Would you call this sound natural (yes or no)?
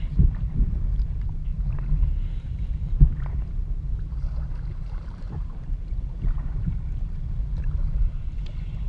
no